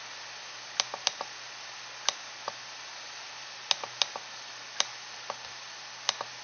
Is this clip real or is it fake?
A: real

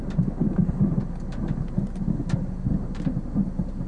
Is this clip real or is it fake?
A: real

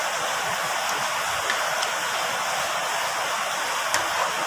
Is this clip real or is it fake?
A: real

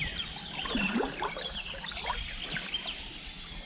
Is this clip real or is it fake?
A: real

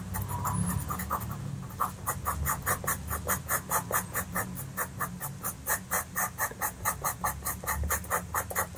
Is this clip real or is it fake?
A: real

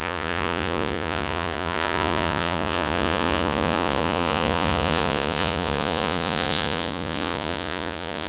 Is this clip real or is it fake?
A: fake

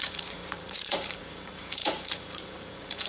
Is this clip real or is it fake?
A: fake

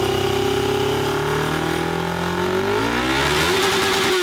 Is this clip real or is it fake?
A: real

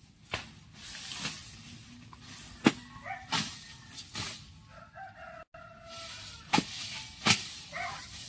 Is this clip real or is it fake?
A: real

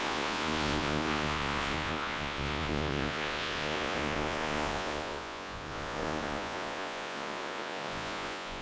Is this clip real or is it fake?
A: fake